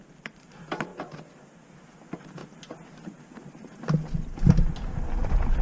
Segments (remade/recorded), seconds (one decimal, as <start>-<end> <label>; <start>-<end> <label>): 0.0-5.6 recorded